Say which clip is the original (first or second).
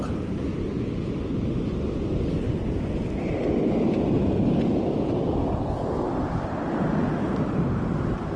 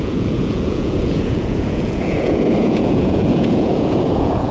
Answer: first